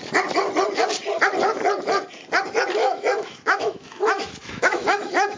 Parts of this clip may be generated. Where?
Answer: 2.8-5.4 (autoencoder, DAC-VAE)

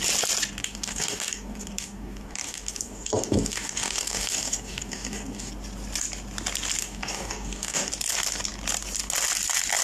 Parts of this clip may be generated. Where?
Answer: 0.6-5.5 (codec, DAC); 6.8-7.9

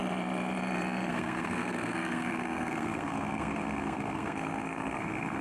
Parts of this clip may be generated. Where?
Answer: 1.1-5.4 (codec, SNAC)

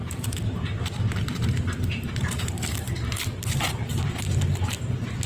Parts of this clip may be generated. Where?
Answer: 0.0-5.3 (vocoder, BigVGAN v2)

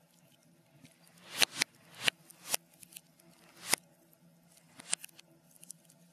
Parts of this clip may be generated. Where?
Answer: 0.0-2.3 (vocoder, BigVGAN v2); 5.6-6.1